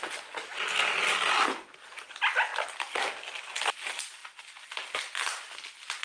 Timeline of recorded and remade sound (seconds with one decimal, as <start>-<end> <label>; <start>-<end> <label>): 0.0-6.0 recorded